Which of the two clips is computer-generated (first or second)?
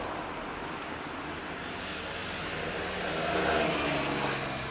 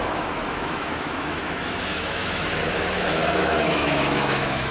second